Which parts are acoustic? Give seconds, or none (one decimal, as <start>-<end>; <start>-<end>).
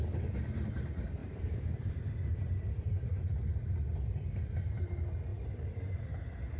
0.0-1.2; 1.9-5.3; 6.0-6.6